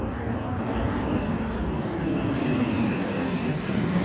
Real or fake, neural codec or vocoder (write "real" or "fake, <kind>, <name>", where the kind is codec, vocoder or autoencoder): fake, codec, DAC